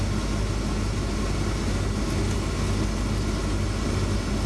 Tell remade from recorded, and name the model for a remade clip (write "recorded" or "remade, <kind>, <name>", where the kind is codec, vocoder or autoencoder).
recorded